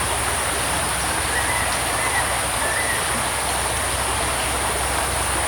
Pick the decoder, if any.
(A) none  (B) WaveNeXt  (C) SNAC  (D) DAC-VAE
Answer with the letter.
A